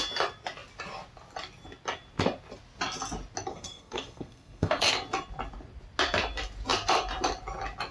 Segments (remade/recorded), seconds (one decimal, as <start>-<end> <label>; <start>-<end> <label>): 0.0-3.5 recorded; 3.5-4.9 remade; 4.9-7.9 recorded